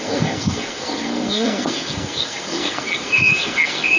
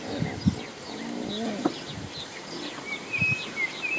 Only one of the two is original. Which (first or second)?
second